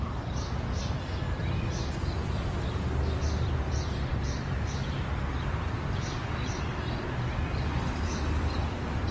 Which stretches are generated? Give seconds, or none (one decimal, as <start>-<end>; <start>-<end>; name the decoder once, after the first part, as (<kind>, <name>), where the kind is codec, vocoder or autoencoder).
4.1-4.9 (vocoder, BigVGAN v2)